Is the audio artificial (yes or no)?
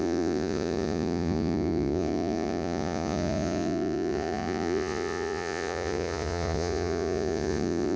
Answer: yes